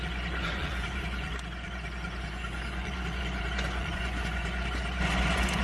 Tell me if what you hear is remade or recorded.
remade